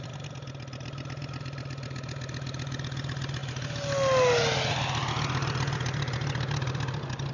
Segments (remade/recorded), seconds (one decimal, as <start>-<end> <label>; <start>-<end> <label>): 0.0-7.3 recorded